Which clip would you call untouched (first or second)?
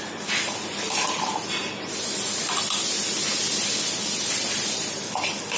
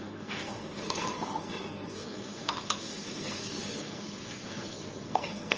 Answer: first